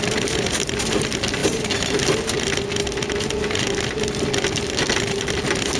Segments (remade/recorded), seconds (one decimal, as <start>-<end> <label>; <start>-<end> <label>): 0.0-5.8 recorded